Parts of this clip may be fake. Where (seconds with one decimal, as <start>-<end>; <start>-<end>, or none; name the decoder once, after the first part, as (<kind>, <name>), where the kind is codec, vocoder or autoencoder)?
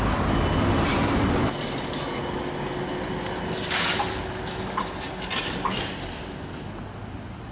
none